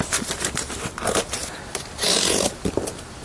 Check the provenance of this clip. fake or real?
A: real